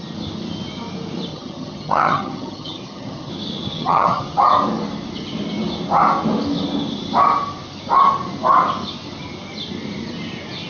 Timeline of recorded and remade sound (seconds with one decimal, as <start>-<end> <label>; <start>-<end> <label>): 0.0-1.3 recorded; 1.3-3.3 remade; 3.3-3.7 recorded; 3.7-4.2 remade; 4.2-10.7 recorded